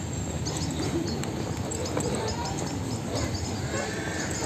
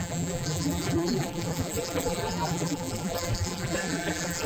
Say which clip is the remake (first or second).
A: second